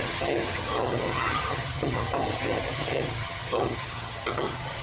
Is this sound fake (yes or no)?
yes